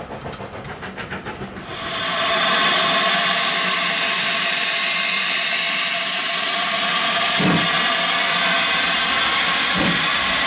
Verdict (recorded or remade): recorded